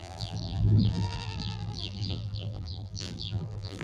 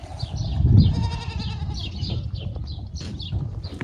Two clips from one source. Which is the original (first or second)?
second